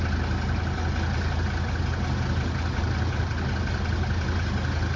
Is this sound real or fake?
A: real